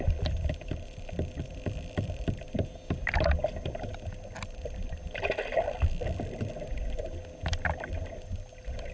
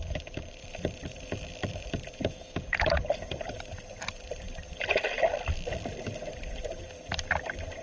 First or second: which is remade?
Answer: second